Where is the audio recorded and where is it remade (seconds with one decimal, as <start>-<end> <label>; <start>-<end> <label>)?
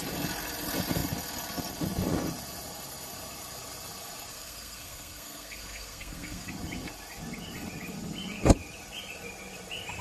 0.0-4.3 recorded; 4.3-6.5 remade; 6.5-10.0 recorded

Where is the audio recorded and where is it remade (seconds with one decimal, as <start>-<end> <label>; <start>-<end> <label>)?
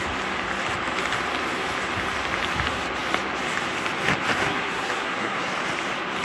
0.0-4.4 recorded; 4.4-5.5 remade; 5.5-6.2 recorded